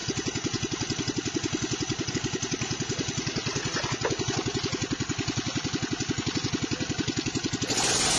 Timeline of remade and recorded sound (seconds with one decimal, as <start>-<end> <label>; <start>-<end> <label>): 0.0-3.4 recorded; 3.4-3.9 remade; 3.9-8.2 recorded